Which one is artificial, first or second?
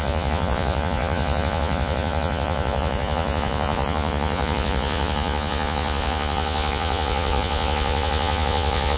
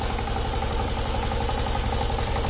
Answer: first